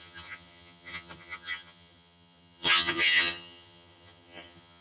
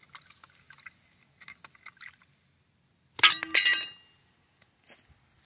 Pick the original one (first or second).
second